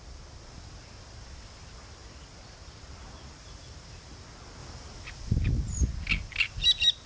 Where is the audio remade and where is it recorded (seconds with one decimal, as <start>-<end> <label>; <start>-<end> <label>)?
0.0-2.0 recorded; 2.0-3.0 remade; 3.0-4.6 recorded; 4.6-5.3 remade; 5.3-7.1 recorded